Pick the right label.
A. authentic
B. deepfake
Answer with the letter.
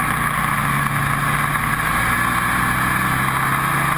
A